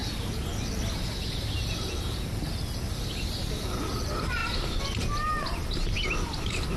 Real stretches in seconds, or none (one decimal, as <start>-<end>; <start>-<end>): 0.0-6.8